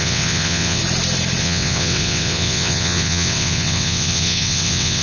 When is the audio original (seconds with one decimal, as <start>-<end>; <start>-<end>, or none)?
0.8-1.4